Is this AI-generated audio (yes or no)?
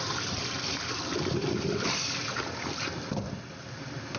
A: yes